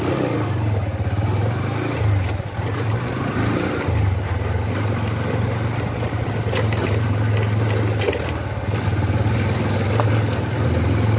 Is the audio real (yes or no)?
yes